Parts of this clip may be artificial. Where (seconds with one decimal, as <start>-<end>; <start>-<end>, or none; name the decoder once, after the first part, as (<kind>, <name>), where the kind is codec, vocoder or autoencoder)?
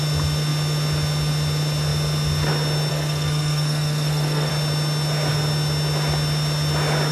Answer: 2.9-4.5 (codec, SNAC)